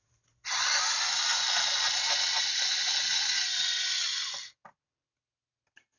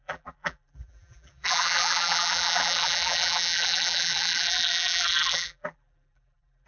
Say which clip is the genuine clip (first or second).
first